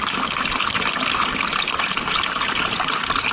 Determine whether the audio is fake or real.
real